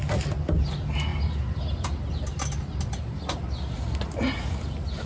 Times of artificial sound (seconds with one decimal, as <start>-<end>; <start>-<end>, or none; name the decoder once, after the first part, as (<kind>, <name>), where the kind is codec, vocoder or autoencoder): none